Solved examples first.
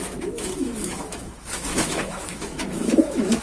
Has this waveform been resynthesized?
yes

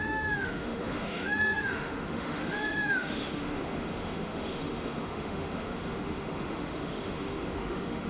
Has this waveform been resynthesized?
yes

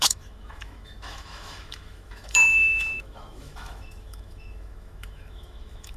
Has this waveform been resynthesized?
yes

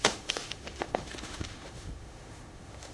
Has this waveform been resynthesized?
yes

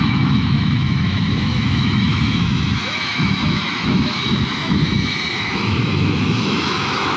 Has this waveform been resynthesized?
yes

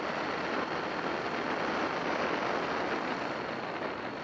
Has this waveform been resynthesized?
no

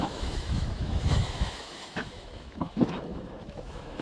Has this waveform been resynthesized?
yes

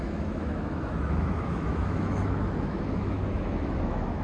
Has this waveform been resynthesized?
yes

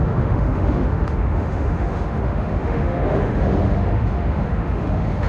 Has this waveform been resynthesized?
yes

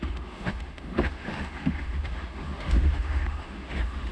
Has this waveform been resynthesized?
yes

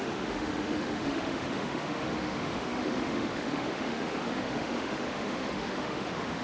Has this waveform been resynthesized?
yes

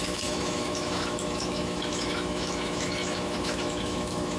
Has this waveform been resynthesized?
yes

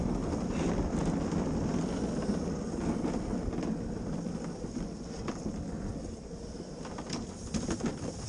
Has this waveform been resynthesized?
no